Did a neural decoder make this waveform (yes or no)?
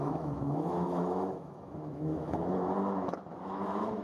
yes